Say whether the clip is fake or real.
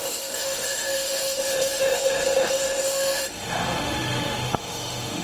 fake